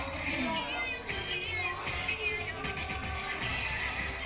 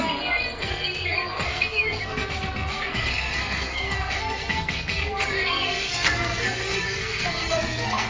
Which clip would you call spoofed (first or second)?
second